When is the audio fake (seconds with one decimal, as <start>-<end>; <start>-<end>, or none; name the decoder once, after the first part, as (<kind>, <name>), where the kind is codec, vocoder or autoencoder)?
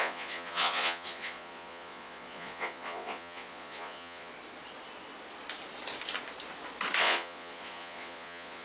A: 0.0-4.3 (vocoder, Vocos); 7.0-8.6